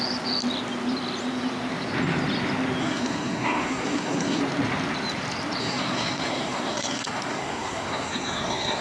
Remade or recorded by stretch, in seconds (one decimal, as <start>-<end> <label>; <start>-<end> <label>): 0.0-2.8 recorded; 2.8-4.4 remade; 4.4-5.6 recorded; 5.6-8.8 remade